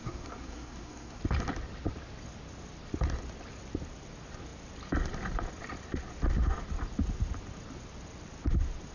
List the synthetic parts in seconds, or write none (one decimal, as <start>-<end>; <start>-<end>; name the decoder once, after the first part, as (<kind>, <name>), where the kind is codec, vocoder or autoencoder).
0.0-1.2 (codec, SNAC)